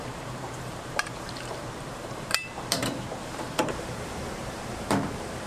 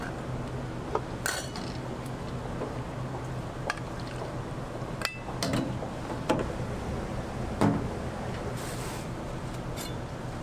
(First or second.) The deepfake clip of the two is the first